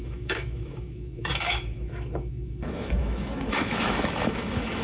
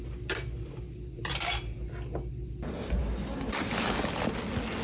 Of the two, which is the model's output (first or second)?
first